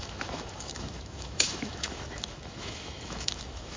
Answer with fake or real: fake